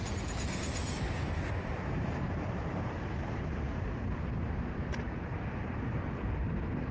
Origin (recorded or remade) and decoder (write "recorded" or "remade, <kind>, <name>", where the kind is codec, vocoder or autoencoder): remade, vocoder, BigVGAN v2